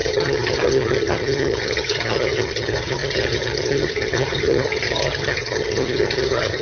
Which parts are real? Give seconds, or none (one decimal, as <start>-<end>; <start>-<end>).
none